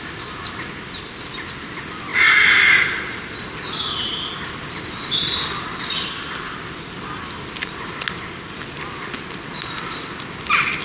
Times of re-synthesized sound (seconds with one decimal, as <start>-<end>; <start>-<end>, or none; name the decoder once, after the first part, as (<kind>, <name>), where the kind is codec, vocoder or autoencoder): none